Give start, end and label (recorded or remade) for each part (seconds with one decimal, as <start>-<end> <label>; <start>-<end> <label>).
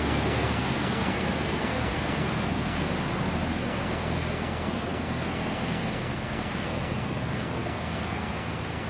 0.0-2.9 remade; 2.9-3.5 recorded; 3.5-8.9 remade